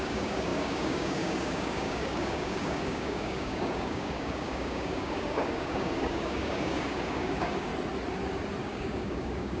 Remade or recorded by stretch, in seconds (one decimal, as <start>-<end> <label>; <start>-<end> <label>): 0.0-7.7 remade; 7.7-8.6 recorded; 8.6-9.6 remade

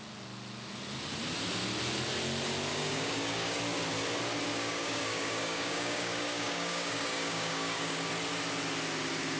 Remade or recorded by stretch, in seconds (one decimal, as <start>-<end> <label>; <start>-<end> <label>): 0.0-2.7 recorded; 2.7-3.6 remade; 3.6-4.5 recorded; 4.5-8.1 remade; 8.1-9.4 recorded

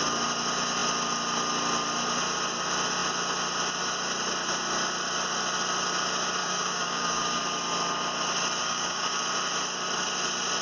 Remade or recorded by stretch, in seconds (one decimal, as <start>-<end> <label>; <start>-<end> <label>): 0.0-6.4 recorded; 6.4-7.4 remade; 7.4-8.6 recorded; 8.6-9.2 remade; 9.2-10.6 recorded

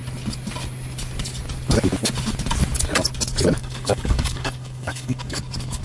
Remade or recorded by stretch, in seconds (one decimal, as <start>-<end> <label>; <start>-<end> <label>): 0.0-3.6 recorded; 3.6-5.8 remade